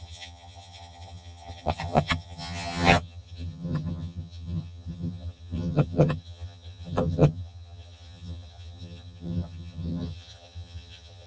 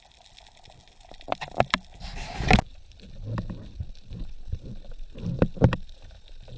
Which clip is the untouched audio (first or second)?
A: second